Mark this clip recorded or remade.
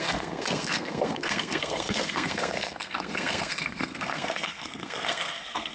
remade